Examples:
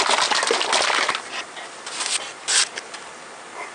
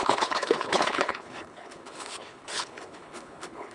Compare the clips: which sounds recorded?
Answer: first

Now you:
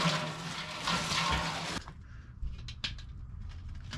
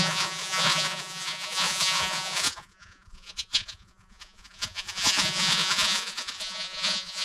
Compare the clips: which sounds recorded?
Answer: first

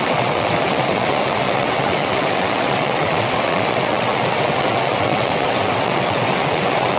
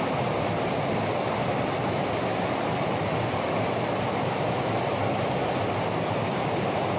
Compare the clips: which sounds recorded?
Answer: second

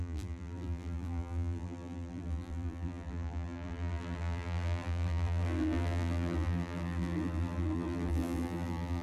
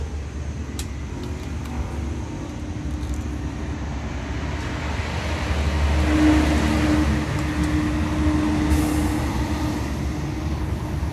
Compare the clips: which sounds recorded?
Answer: second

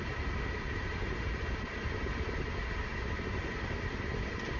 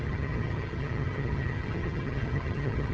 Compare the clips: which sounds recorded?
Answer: first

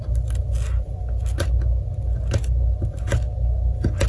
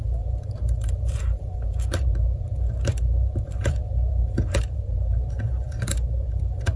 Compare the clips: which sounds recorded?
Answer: first